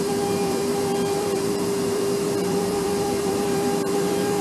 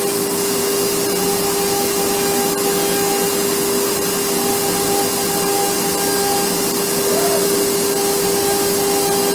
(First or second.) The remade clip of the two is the first